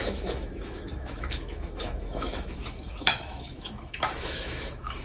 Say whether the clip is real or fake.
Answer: fake